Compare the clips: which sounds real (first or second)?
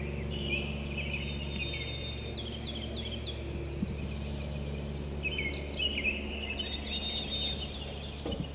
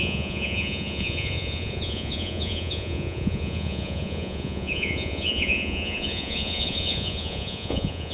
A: first